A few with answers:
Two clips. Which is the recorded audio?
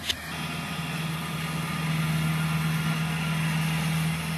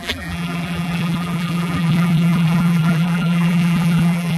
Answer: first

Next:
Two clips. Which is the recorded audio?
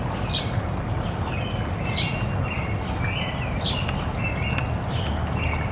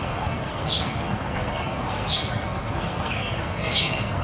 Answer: first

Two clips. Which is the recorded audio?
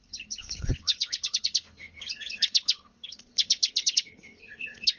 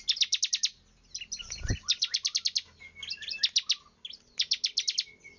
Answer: second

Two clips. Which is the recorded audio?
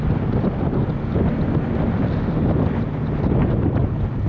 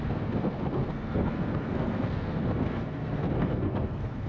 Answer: first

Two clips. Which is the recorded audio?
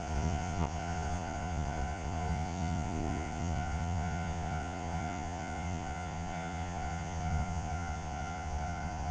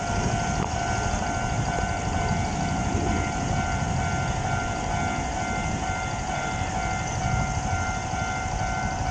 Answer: second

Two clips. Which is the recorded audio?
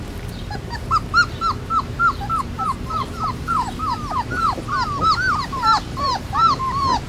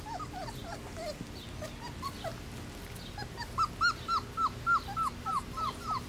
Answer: second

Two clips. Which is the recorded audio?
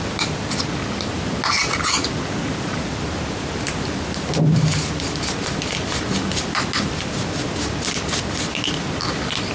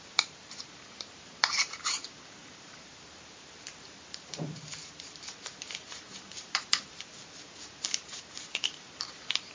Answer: first